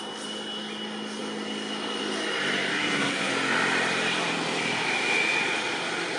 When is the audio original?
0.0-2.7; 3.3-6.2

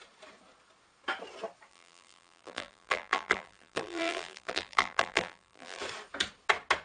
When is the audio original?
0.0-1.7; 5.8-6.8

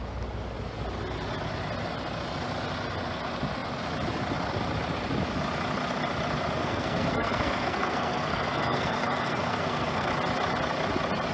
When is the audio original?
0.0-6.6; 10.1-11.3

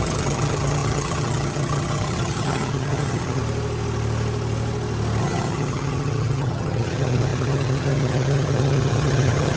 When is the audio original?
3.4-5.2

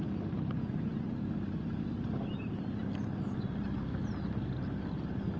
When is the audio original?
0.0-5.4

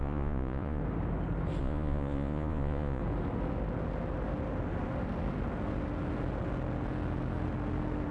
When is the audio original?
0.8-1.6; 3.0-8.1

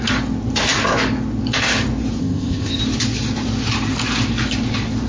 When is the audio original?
0.0-2.2; 2.8-5.1